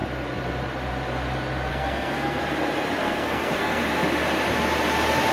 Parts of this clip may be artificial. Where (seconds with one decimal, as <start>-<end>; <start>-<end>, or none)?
1.7-2.4; 3.0-3.8

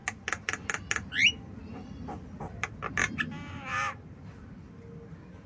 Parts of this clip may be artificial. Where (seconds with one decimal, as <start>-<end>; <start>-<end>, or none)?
none

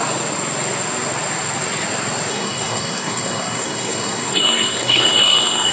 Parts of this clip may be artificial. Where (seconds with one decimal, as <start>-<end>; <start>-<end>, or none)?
2.3-5.7